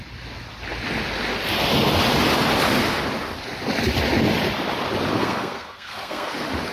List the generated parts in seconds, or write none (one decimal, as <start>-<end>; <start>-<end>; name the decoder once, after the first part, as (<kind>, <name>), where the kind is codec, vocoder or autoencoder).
5.1-6.3 (codec, SNAC)